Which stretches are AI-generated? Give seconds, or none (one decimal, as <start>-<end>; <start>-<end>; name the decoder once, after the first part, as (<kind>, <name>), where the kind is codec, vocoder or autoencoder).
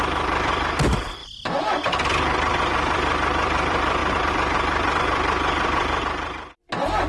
0.0-1.2 (vocoder, BigVGAN v2); 2.5-7.1